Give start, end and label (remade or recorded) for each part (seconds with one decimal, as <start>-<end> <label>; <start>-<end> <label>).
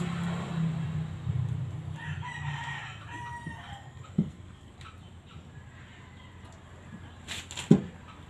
0.0-3.7 recorded; 3.7-4.7 remade; 4.7-8.3 recorded